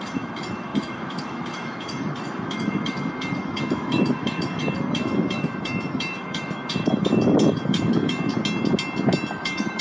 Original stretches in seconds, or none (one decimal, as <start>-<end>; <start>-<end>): 8.3-9.3